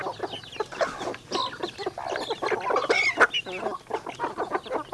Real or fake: real